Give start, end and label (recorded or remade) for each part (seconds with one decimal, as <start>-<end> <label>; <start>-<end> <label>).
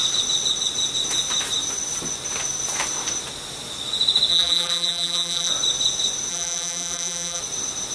0.0-4.3 recorded; 4.3-5.5 remade; 5.5-6.3 recorded; 6.3-7.4 remade; 7.4-7.9 recorded